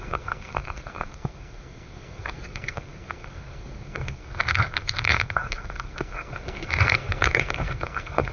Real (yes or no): no